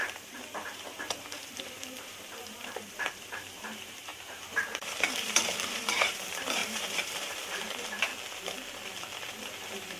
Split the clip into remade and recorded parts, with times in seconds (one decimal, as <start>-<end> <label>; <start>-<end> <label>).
0.0-8.1 remade; 8.1-9.3 recorded; 9.3-10.0 remade